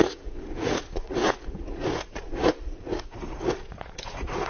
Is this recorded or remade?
remade